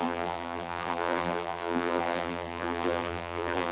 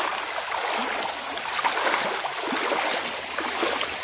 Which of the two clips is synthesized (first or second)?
first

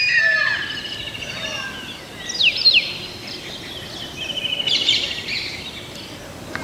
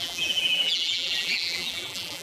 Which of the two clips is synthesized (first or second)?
second